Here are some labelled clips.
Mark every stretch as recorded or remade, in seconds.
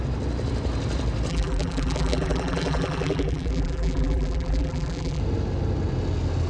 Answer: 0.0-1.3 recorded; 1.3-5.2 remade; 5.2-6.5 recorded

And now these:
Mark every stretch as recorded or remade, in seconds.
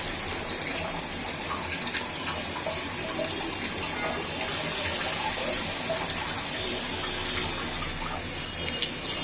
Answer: 0.0-0.7 recorded; 0.7-2.4 remade; 2.4-5.3 recorded; 5.3-6.9 remade; 6.9-9.2 recorded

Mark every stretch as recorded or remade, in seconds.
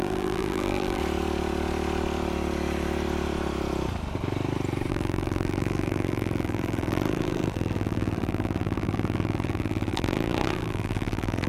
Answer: 0.0-1.0 remade; 1.0-4.9 recorded; 4.9-11.5 remade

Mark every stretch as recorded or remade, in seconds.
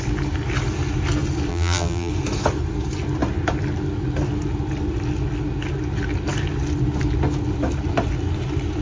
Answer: 0.0-1.5 recorded; 1.5-2.1 remade; 2.1-8.8 recorded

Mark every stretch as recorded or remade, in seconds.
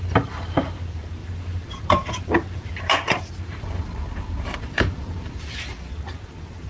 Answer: 0.0-6.7 remade